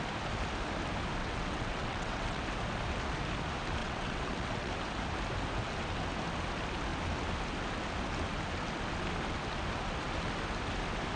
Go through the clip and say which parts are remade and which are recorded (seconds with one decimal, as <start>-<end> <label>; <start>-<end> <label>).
0.0-1.2 recorded; 1.2-2.4 remade; 2.4-3.8 recorded; 3.8-4.7 remade; 4.7-11.2 recorded